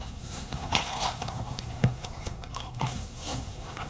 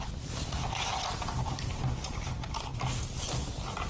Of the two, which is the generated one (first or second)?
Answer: first